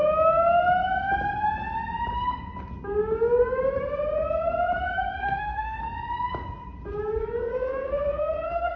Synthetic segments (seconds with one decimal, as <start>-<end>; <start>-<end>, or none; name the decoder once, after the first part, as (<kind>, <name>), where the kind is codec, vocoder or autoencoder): 5.2-5.8 (codec, SNAC); 7.2-8.8